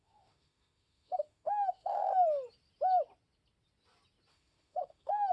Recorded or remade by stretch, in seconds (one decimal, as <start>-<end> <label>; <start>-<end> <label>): 0.0-2.1 remade; 2.1-4.3 recorded; 4.3-5.3 remade